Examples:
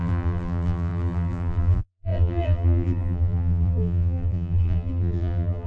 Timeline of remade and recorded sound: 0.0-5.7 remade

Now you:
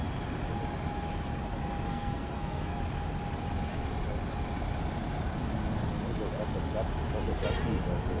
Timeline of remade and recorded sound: 0.0-1.9 recorded; 1.9-2.8 remade; 2.8-8.2 recorded

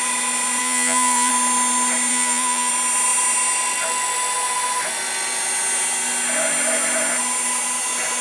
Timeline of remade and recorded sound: 0.0-0.6 recorded; 0.6-1.3 remade; 1.3-2.1 recorded; 2.1-2.7 remade; 2.7-8.2 recorded

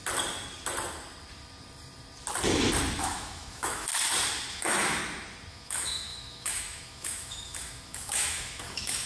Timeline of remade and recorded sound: 0.0-3.0 recorded; 3.0-3.9 remade; 3.9-4.5 recorded; 4.5-5.0 remade; 5.0-5.5 recorded; 5.5-9.1 remade

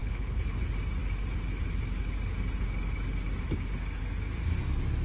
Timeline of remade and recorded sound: 0.0-0.6 remade; 0.6-5.0 recorded

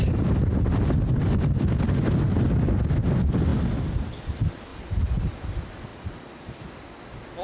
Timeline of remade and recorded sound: 0.0-4.7 recorded; 4.7-5.4 remade; 5.4-5.9 recorded; 5.9-6.6 remade; 6.6-7.4 recorded